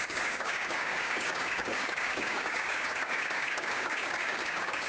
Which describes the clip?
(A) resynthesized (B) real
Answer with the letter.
A